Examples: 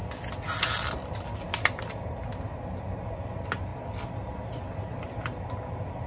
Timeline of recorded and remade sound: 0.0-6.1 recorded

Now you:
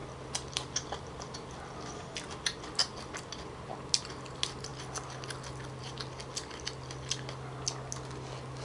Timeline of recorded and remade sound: 0.0-8.6 recorded